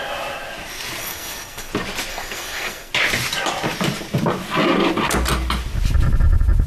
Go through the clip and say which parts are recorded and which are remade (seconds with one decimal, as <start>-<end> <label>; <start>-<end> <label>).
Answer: 0.0-1.0 recorded; 1.0-1.7 remade; 1.7-2.1 recorded; 2.1-2.9 remade; 2.9-6.7 recorded